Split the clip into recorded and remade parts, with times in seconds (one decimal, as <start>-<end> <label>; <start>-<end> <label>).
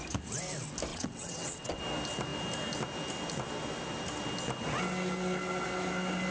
0.0-0.9 recorded; 0.9-1.8 remade; 1.8-6.3 recorded